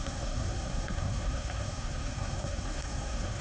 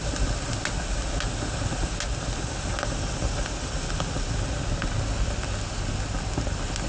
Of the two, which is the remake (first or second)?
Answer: first